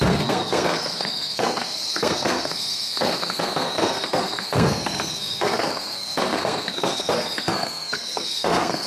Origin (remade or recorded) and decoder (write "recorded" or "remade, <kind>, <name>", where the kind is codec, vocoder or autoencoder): remade, codec, SNAC